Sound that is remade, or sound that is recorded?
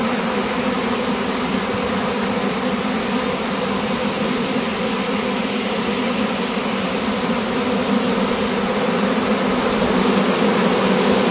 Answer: recorded